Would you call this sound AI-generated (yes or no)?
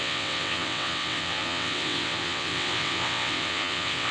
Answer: yes